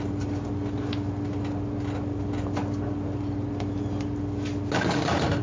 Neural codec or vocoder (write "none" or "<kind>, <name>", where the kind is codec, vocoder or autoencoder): none